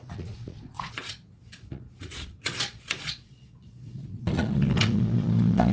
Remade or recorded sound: remade